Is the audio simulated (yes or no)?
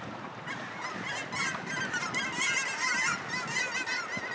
no